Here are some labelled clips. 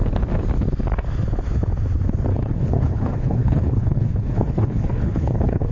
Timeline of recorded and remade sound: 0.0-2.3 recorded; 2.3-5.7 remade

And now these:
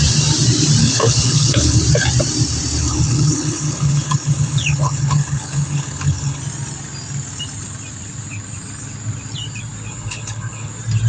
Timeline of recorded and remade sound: 0.0-0.8 recorded; 0.8-1.8 remade; 1.8-2.8 recorded; 2.8-6.4 remade; 6.4-9.9 recorded; 9.9-10.7 remade; 10.7-11.1 recorded